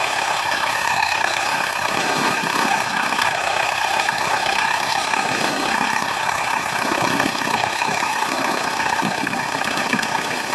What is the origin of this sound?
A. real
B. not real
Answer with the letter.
B